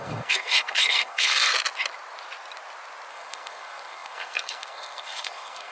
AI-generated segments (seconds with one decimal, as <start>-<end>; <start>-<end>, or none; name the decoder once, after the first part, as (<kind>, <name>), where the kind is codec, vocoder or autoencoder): 0.0-1.5 (codec, SNAC); 3.1-5.7